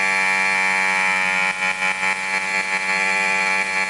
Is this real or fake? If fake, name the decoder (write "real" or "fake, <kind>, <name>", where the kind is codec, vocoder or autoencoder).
real